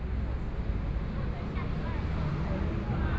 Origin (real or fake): real